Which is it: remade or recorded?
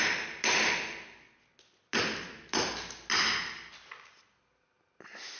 recorded